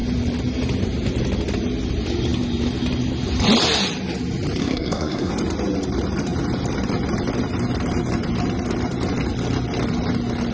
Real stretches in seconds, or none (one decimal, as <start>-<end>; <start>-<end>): 0.0-4.6; 5.3-10.5